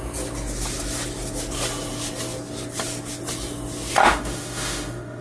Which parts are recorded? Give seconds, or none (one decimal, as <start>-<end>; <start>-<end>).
0.0-4.0